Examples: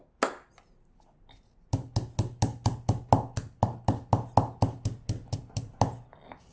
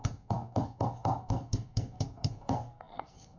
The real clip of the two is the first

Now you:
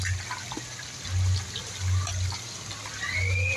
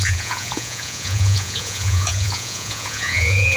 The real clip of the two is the first